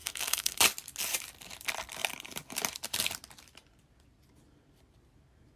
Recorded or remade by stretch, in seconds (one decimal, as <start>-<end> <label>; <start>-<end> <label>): 0.0-0.6 remade; 0.6-5.6 recorded